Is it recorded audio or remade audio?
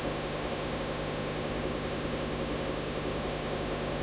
remade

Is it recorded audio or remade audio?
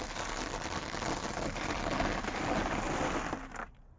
recorded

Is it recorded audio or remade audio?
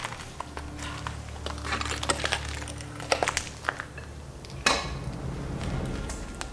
recorded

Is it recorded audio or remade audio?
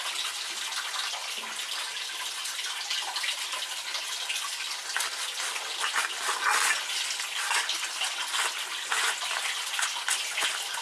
recorded